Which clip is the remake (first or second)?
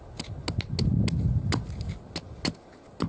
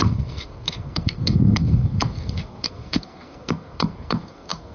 second